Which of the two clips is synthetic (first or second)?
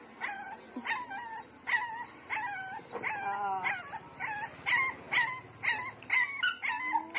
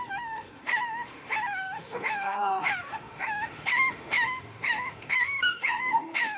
second